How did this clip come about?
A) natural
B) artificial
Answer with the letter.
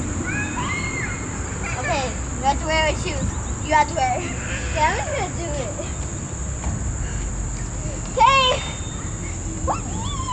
A